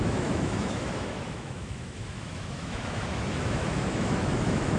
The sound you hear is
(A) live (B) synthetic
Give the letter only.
B